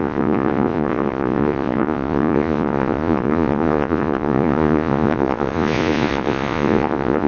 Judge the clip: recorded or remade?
remade